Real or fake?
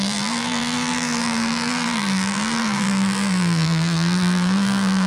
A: fake